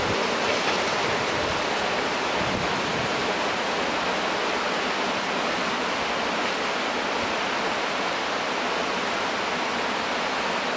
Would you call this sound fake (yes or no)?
no